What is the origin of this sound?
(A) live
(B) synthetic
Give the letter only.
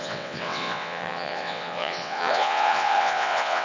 B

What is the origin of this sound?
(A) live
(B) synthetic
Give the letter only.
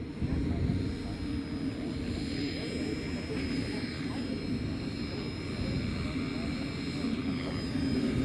A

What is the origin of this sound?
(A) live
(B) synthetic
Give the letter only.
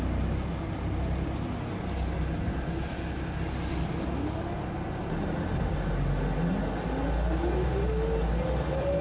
A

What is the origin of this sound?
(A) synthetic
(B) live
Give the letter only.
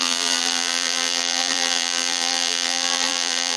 A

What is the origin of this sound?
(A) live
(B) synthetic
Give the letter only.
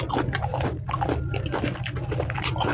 A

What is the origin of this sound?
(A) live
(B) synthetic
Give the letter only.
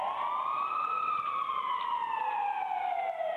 A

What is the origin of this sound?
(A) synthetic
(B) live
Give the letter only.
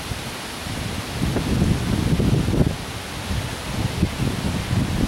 B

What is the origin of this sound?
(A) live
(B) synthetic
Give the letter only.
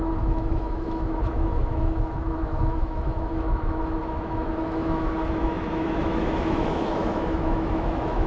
B